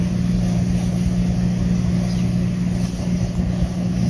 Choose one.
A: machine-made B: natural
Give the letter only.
B